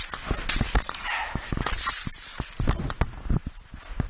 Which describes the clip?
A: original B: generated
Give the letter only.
A